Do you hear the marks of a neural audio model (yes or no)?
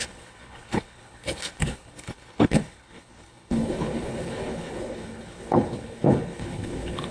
yes